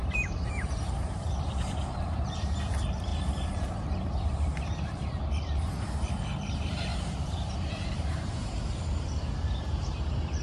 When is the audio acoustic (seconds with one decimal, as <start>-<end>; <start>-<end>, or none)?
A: none